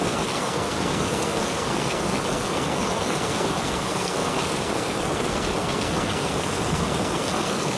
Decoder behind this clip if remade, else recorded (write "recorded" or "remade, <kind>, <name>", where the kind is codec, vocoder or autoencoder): remade, codec, SNAC